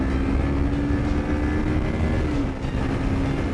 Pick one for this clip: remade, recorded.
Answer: recorded